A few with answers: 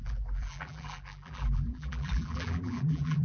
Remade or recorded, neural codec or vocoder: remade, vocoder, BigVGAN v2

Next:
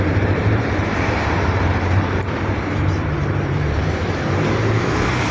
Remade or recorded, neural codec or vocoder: remade, vocoder, BigVGAN v2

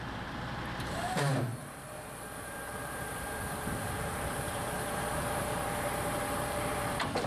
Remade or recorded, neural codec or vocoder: remade, vocoder, BigVGAN v2